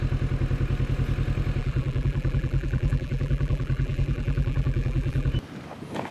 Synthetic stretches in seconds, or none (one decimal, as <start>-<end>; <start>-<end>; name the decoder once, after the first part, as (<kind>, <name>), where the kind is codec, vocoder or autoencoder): 1.6-5.3 (vocoder, BigVGAN v2)